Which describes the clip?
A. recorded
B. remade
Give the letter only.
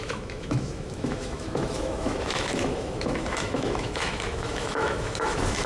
B